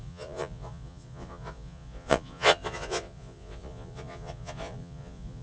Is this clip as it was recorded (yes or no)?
no